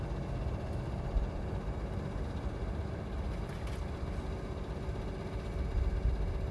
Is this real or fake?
real